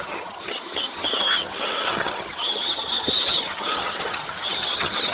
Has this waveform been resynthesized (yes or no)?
yes